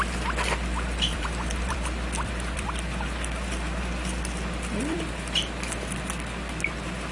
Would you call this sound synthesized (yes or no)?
yes